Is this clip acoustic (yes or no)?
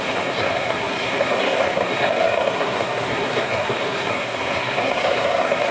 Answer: no